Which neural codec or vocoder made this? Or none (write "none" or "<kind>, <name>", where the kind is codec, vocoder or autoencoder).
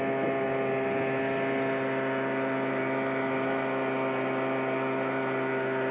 none